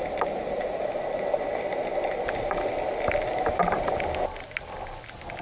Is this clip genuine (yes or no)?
yes